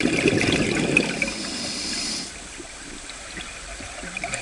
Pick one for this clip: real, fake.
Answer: fake